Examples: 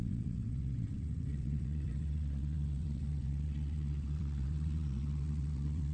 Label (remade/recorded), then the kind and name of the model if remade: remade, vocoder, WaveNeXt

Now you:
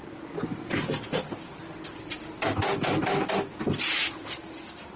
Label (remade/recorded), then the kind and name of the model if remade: recorded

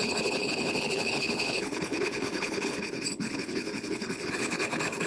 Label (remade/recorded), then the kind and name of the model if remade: remade, codec, HILCodec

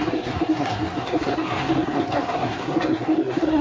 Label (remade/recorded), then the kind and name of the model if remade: remade, codec, SNAC